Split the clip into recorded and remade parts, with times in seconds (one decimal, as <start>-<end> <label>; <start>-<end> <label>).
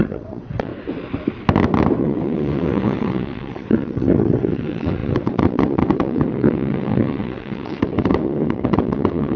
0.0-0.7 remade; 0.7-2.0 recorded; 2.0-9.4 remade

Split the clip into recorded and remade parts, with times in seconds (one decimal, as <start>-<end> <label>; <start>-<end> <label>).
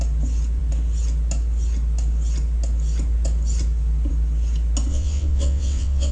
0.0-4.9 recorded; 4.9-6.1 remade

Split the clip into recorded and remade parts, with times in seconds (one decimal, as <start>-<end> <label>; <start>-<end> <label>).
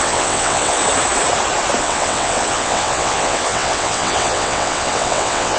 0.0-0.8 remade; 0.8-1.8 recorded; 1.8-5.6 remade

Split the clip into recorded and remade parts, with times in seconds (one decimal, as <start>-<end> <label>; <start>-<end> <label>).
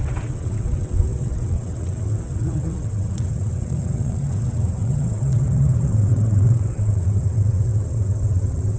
0.0-8.8 remade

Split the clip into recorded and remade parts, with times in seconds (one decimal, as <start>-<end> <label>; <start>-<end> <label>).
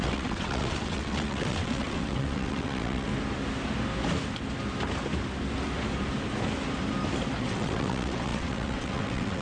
0.0-3.1 remade; 3.1-7.4 recorded; 7.4-9.4 remade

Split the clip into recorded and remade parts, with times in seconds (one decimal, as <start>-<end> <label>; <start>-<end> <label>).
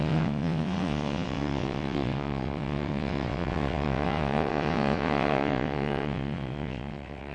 0.0-7.3 remade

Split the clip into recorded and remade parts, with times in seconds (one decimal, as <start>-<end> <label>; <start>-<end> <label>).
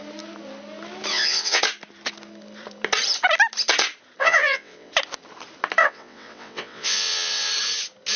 0.0-1.1 recorded; 1.1-1.6 remade; 1.6-4.2 recorded; 4.2-4.9 remade; 4.9-5.8 recorded; 5.8-7.5 remade; 7.5-8.2 recorded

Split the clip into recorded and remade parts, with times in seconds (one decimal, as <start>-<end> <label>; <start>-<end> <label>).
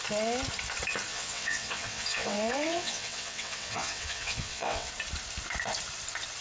0.0-1.1 recorded; 1.1-4.9 remade; 4.9-6.4 recorded